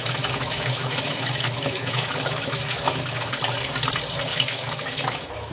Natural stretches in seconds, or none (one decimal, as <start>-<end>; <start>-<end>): 3.3-4.3